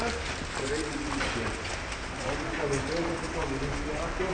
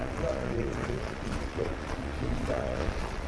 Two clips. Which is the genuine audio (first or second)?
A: first